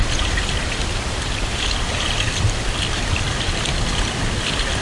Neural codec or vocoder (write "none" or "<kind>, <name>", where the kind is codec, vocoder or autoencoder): none